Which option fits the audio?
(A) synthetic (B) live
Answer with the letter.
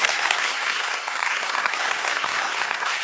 A